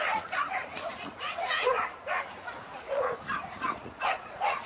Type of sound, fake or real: fake